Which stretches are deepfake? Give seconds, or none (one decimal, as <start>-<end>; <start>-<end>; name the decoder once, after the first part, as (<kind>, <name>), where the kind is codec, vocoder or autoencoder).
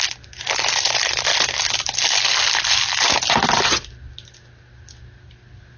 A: none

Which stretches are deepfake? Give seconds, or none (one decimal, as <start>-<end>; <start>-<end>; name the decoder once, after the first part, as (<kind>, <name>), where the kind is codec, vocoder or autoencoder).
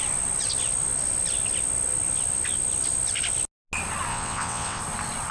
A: 4.1-4.8 (vocoder, WaveNeXt)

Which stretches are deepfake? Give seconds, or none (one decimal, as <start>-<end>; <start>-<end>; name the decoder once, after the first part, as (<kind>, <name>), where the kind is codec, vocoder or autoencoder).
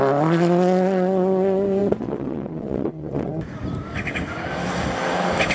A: 1.8-3.3 (vocoder, WaveNeXt)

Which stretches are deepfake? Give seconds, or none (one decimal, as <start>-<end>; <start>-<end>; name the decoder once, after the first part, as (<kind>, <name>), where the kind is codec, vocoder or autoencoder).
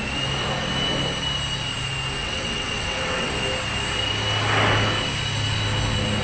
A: 2.2-3.3 (vocoder, WaveNeXt)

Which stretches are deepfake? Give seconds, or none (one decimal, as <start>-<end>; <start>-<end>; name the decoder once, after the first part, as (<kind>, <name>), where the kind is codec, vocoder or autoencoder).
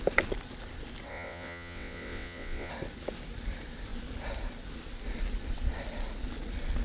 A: 1.1-2.7 (vocoder, WaveNeXt)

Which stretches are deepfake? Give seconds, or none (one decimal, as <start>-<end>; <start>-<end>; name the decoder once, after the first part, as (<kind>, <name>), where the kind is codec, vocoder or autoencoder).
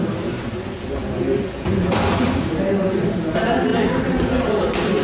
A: none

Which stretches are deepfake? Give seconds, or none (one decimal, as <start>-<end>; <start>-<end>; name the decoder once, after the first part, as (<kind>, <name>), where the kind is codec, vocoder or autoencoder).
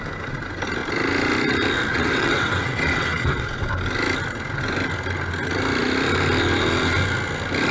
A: 1.9-3.7 (vocoder, WaveNeXt)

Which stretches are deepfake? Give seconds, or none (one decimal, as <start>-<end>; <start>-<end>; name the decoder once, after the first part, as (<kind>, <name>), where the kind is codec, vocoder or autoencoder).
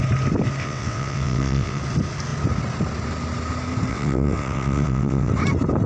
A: 0.6-1.8 (vocoder, WaveNeXt); 3.9-5.3